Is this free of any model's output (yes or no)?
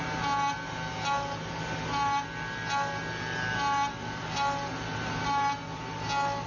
yes